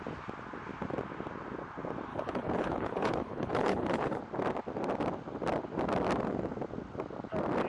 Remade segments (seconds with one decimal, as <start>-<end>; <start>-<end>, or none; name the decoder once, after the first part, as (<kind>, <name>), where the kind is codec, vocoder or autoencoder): 2.1-4.2 (codec, HILCodec)